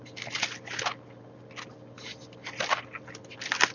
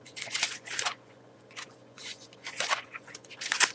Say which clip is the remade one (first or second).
second